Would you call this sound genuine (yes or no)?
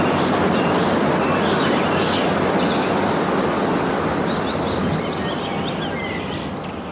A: yes